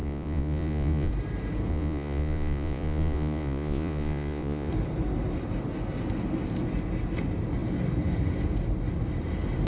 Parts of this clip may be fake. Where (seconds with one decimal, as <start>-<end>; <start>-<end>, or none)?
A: 0.0-1.1; 1.7-4.7